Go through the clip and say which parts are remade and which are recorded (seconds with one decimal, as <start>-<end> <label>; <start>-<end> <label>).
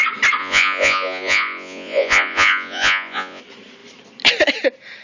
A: 0.0-0.4 recorded; 0.4-3.4 remade; 3.4-5.0 recorded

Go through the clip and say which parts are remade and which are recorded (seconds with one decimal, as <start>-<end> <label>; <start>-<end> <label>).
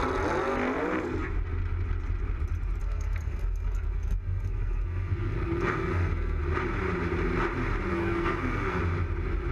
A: 0.0-2.8 recorded; 2.8-6.4 remade; 6.4-7.9 recorded; 7.9-8.8 remade; 8.8-9.5 recorded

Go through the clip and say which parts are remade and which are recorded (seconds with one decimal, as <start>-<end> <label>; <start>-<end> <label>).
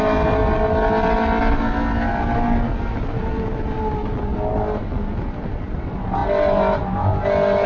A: 0.0-7.7 recorded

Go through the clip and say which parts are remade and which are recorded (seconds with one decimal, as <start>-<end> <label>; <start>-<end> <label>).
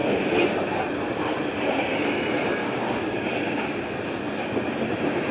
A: 0.0-2.6 recorded; 2.6-3.3 remade; 3.3-5.3 recorded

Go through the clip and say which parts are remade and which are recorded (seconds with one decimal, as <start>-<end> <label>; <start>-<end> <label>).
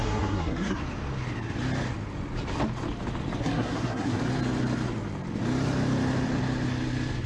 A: 0.0-0.8 remade; 0.8-3.4 recorded; 3.4-4.2 remade; 4.2-7.3 recorded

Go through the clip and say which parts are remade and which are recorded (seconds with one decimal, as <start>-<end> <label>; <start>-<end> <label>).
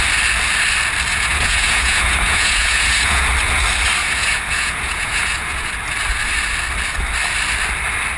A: 0.0-1.1 recorded; 1.1-3.3 remade; 3.3-4.0 recorded; 4.0-5.7 remade; 5.7-8.2 recorded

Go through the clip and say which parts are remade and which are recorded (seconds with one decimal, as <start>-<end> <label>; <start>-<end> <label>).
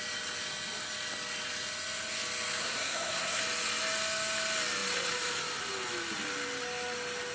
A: 0.0-2.6 recorded; 2.6-3.4 remade; 3.4-7.3 recorded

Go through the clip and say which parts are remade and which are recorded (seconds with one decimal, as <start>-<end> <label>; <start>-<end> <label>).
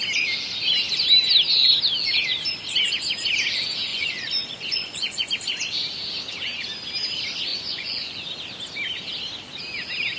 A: 0.0-3.9 recorded; 3.9-5.3 remade; 5.3-7.5 recorded; 7.5-8.3 remade; 8.3-10.2 recorded